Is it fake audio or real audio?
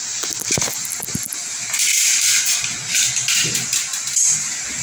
real